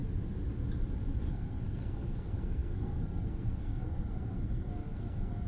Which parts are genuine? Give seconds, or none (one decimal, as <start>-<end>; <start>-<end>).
0.0-1.3